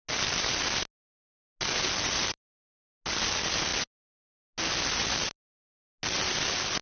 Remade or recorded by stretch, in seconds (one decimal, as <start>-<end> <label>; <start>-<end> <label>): 0.0-6.8 recorded